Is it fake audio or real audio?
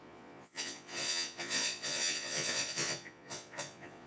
fake